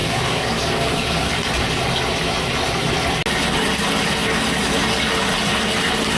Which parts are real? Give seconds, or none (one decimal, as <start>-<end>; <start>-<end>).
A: 1.3-6.2

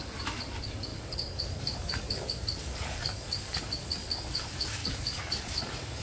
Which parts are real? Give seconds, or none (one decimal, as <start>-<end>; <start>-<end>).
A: none

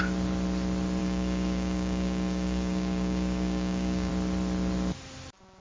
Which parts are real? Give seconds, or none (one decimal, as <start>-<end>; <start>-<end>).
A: 0.0-1.0; 4.1-5.6

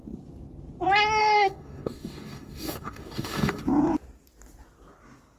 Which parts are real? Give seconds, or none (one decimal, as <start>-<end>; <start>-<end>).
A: 0.0-1.2; 3.6-5.4

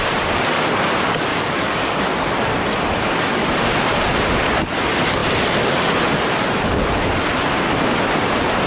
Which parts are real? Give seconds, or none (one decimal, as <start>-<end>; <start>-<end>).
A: 0.0-1.3; 2.0-8.7

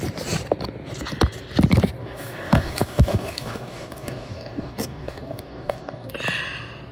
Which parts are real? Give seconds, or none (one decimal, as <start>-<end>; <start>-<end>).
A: 0.0-2.0; 6.1-6.9

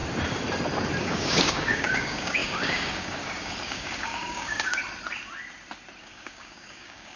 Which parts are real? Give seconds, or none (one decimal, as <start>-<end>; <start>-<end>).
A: 0.0-1.0; 4.8-6.0